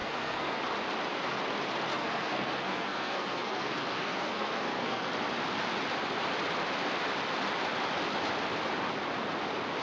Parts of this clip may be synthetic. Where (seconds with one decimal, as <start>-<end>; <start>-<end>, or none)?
0.0-0.6; 1.9-5.1